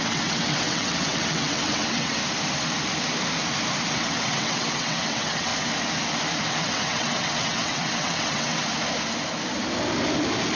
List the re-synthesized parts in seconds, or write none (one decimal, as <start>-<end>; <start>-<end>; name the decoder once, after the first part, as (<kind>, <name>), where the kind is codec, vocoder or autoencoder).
0.0-2.2 (vocoder, WaveNeXt); 3.9-5.5; 6.5-8.6